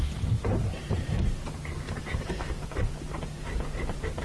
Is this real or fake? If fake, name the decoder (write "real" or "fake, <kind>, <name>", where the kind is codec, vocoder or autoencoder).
fake, vocoder, BigVGAN v2